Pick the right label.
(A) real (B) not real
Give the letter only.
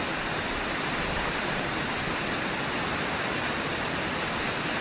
B